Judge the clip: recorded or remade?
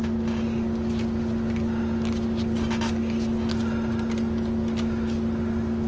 recorded